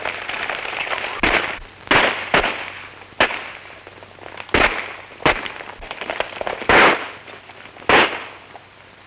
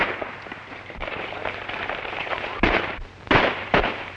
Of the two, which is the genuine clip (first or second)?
first